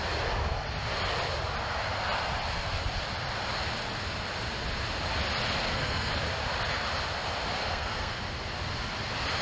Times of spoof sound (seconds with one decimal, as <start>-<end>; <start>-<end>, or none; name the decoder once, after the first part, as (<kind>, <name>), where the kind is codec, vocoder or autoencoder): 5.6-6.1 (codec, SNAC); 7.6-8.2